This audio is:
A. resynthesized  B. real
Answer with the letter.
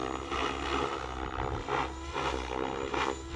B